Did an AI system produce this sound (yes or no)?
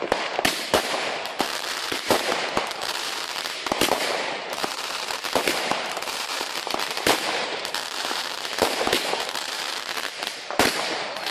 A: yes